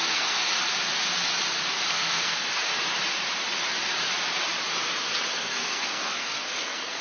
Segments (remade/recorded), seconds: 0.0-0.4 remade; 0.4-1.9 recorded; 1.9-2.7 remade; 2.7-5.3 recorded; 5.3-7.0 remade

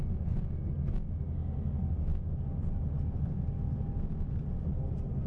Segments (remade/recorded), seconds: 0.0-5.3 recorded

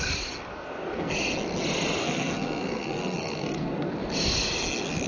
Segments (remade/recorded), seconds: 0.0-0.5 recorded; 0.5-1.1 remade; 1.1-2.0 recorded; 2.0-3.9 remade; 3.9-5.1 recorded

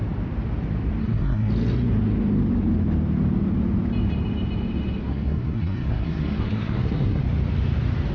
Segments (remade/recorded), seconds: 0.0-1.0 recorded; 1.0-1.5 remade; 1.5-5.1 recorded; 5.1-7.2 remade; 7.2-8.1 recorded

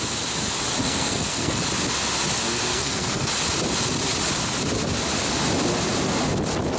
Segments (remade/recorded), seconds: 0.0-0.8 recorded; 0.8-1.6 remade; 1.6-2.7 recorded; 2.7-3.3 remade; 3.3-6.8 recorded

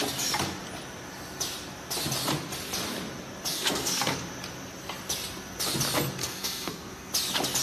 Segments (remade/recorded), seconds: 0.0-3.5 recorded; 3.5-4.2 remade; 4.2-6.2 recorded; 6.2-7.1 remade; 7.1-7.6 recorded

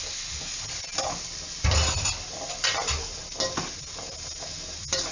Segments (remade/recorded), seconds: 0.0-5.1 recorded